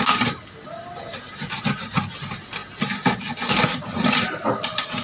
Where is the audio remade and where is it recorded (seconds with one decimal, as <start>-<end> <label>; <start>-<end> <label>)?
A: 0.0-5.0 recorded